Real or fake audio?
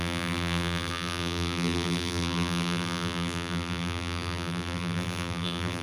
fake